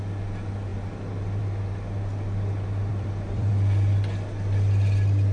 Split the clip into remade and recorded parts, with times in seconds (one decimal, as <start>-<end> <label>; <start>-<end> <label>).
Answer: 0.0-2.9 recorded; 2.9-3.5 remade; 3.5-5.3 recorded